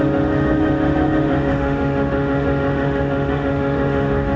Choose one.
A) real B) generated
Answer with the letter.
B